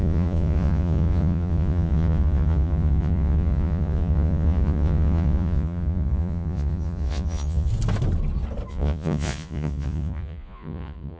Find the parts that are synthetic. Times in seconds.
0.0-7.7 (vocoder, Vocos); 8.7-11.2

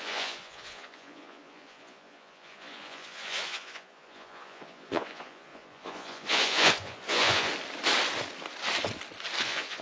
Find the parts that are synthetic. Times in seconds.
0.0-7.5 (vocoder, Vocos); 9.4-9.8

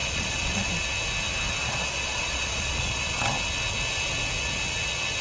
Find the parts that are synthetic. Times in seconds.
0.0-0.7 (vocoder, Vocos); 1.6-3.3

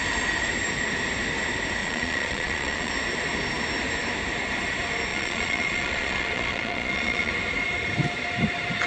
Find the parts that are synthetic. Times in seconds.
1.8-2.9 (vocoder, Vocos); 5.1-7.3